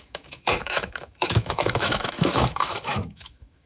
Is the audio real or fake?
fake